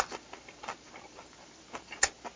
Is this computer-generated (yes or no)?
no